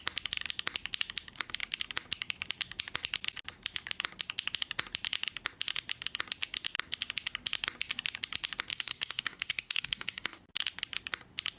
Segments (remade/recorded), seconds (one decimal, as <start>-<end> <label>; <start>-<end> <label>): 0.0-8.7 recorded; 8.7-10.4 remade; 10.4-11.6 recorded